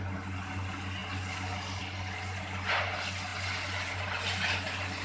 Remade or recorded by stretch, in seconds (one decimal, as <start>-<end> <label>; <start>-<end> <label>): 0.0-5.0 recorded